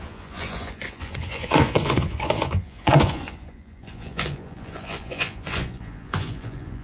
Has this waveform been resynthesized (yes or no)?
yes